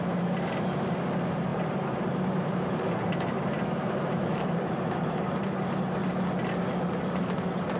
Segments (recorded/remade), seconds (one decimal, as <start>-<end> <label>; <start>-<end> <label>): 0.0-1.5 recorded; 1.5-5.3 remade; 5.3-7.8 recorded

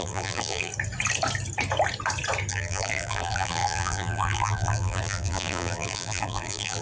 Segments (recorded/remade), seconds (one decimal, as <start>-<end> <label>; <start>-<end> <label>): 0.0-0.7 remade; 0.7-2.5 recorded; 2.5-6.8 remade

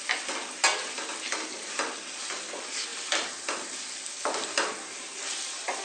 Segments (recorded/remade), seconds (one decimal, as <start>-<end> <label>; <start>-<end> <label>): 0.0-2.9 recorded; 2.9-3.8 remade; 3.8-5.1 recorded; 5.1-5.8 remade